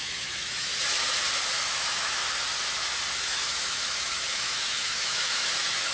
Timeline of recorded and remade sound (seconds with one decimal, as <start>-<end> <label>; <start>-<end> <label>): 0.0-0.7 remade; 0.7-1.8 recorded; 1.8-2.2 remade; 2.2-3.1 recorded; 3.1-5.9 remade